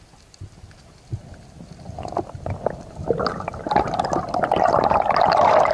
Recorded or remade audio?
recorded